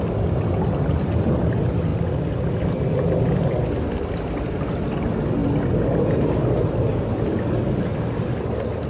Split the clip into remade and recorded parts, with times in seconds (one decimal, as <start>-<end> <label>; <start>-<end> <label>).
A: 0.0-8.9 recorded